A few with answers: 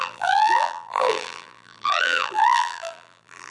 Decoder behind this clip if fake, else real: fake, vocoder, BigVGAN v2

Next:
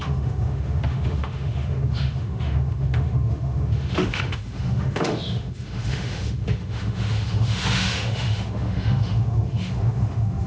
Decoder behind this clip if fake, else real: fake, autoencoder, DAC-VAE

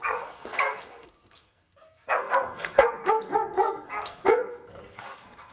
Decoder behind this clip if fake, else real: fake, codec, SNAC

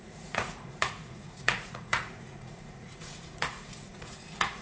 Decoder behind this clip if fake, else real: fake, vocoder, Vocos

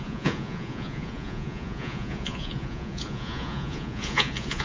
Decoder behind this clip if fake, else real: fake, vocoder, Vocos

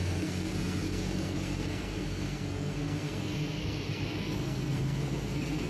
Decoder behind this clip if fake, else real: fake, codec, SNAC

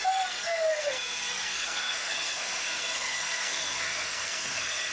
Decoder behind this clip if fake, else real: fake, codec, SNAC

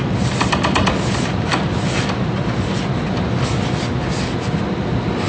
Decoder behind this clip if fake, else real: real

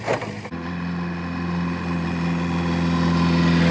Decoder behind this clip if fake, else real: real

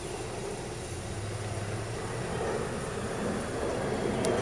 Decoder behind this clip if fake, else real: real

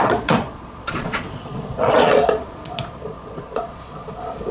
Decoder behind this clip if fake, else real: fake, vocoder, Vocos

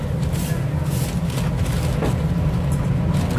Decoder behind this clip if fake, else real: real